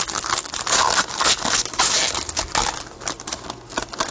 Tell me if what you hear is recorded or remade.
recorded